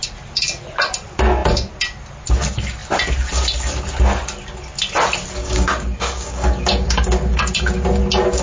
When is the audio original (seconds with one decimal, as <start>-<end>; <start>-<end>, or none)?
0.0-5.4; 7.4-8.4